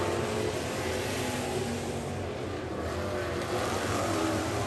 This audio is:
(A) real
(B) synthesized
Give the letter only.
A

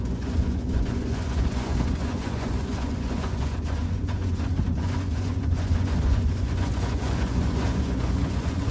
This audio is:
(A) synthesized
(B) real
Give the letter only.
A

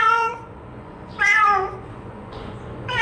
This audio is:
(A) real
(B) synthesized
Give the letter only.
B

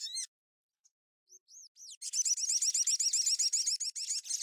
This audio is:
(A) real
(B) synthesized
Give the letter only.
A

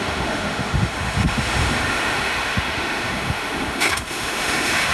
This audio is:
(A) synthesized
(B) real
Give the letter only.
A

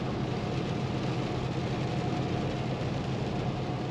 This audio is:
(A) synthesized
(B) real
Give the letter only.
B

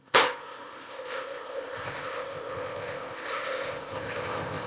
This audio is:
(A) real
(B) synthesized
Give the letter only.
B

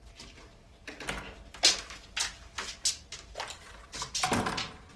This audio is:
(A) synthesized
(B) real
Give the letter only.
B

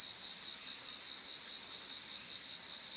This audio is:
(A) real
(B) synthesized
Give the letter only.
B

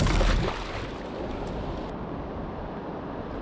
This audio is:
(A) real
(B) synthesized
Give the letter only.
A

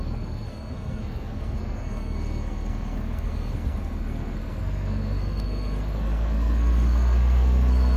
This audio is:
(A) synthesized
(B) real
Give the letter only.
A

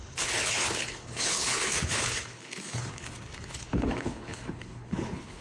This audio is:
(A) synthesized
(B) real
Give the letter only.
A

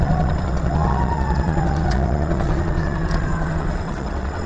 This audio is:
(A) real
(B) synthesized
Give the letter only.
B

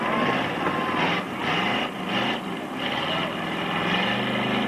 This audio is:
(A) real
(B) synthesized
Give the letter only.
A